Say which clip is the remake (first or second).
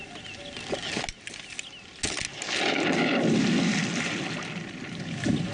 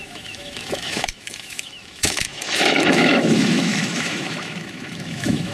second